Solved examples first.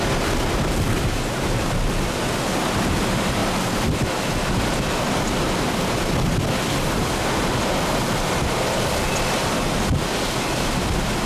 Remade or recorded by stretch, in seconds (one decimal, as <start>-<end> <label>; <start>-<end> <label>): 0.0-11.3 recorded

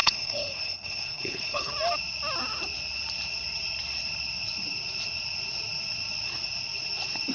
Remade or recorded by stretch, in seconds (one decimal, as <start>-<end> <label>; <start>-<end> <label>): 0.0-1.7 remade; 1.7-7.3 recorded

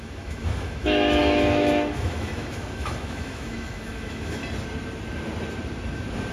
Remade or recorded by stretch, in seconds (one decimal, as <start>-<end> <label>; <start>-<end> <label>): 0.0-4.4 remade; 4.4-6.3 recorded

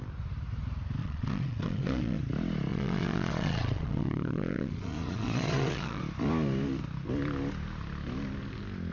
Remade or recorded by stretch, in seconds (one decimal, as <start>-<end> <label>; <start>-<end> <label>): 0.0-1.0 recorded; 1.0-2.2 remade; 2.2-2.7 recorded; 2.7-6.0 remade; 6.0-8.9 recorded

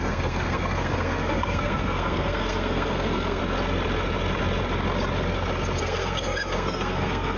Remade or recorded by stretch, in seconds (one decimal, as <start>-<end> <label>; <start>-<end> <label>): 0.0-3.4 remade; 3.4-5.8 recorded; 5.8-7.4 remade

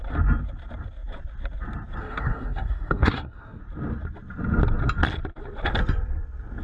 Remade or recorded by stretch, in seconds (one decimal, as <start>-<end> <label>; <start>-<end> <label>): 0.0-2.0 recorded; 2.0-3.6 remade; 3.6-6.6 recorded